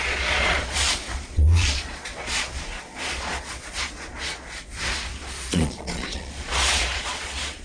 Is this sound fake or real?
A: fake